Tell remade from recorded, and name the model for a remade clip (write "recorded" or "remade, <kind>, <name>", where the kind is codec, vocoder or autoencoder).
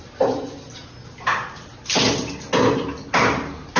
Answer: recorded